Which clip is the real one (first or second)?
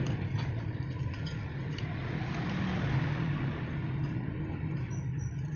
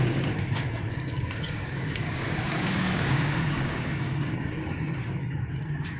first